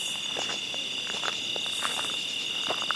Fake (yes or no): no